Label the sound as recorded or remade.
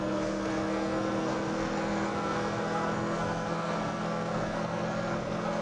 remade